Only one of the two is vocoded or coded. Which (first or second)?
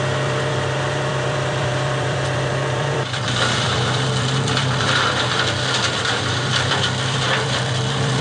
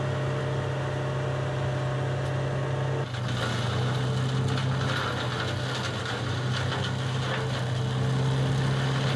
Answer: first